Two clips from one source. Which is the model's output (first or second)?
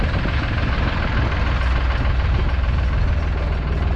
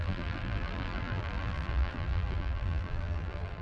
second